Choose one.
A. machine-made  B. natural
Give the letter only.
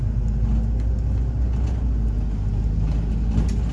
B